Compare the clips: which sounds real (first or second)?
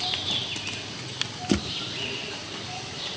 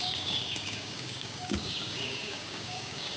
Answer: first